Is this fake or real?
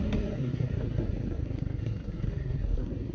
fake